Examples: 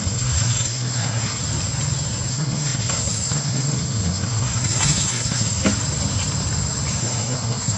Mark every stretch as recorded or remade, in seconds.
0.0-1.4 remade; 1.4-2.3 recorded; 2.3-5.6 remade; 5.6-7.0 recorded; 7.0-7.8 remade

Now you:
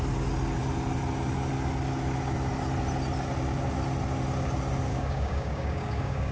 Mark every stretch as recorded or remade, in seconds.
0.0-4.9 recorded; 4.9-6.3 remade

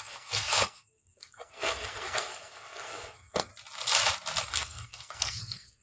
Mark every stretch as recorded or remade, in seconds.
0.0-3.5 remade; 3.5-4.5 recorded; 4.5-5.8 remade